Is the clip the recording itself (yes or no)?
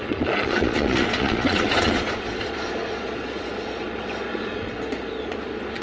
no